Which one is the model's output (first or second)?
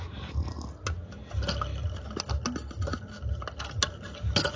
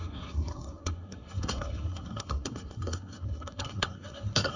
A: second